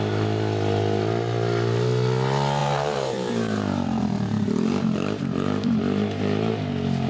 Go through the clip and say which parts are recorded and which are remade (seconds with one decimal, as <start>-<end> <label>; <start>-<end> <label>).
0.0-2.6 recorded; 2.6-6.5 remade; 6.5-7.1 recorded